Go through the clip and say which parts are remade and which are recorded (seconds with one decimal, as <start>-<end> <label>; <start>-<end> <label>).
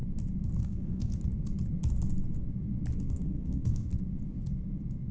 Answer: 0.0-0.6 recorded; 0.6-1.1 remade; 1.1-3.0 recorded; 3.0-3.9 remade; 3.9-5.1 recorded